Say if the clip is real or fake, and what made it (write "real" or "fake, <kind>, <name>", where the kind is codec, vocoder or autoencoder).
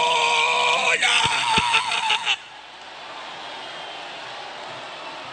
real